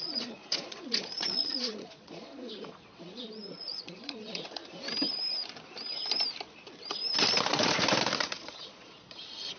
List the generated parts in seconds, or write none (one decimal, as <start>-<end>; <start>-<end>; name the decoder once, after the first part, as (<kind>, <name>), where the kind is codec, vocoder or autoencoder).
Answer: 0.0-4.6 (vocoder, Vocos); 8.2-9.6